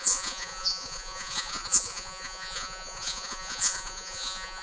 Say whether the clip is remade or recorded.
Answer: remade